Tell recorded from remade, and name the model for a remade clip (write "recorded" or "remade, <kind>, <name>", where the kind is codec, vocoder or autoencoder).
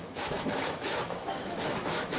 remade, autoencoder, DAC-VAE